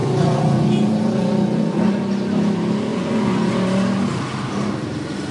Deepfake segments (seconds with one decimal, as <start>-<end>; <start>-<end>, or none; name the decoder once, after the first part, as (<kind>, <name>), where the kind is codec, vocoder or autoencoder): 0.0-2.0 (vocoder, Vocos); 2.9-3.5